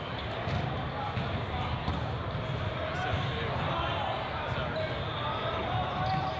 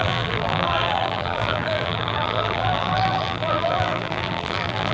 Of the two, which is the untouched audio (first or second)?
first